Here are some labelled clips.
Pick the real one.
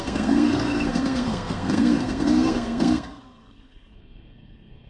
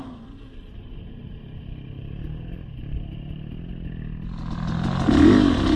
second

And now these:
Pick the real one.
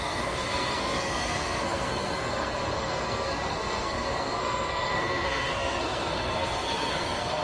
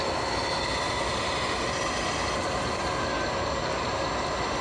second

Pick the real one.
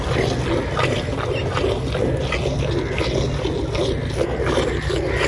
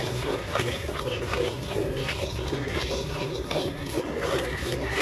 first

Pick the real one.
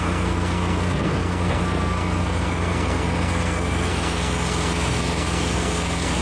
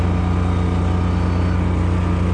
second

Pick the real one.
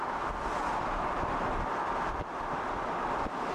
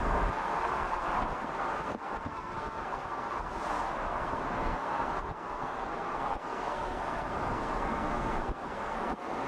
first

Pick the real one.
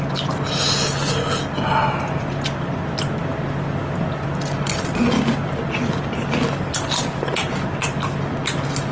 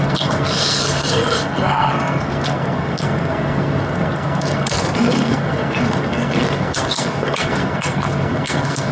first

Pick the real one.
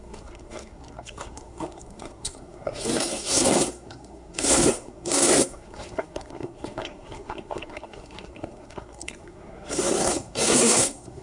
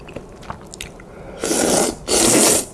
second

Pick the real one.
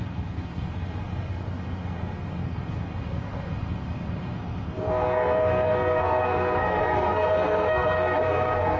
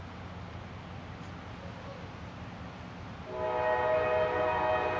second